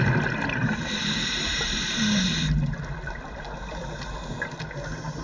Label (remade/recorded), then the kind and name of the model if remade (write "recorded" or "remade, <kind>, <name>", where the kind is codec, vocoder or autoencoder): recorded